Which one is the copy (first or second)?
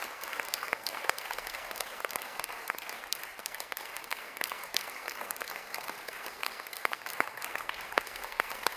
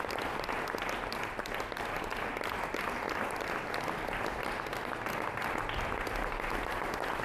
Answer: first